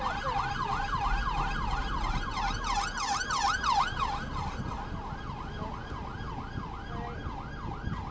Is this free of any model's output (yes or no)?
yes